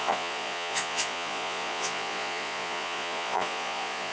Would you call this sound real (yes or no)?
no